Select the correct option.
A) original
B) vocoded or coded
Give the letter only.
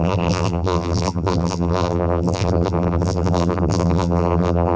B